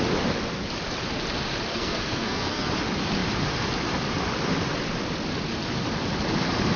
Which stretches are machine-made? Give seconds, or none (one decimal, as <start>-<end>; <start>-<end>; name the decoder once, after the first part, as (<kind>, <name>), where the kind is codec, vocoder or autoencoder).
1.7-2.7 (codec, SNAC)